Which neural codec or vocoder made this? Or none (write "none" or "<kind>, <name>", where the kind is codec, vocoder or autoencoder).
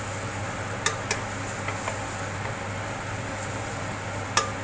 none